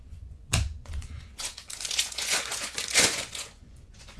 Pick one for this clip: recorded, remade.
remade